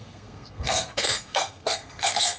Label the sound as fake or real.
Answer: fake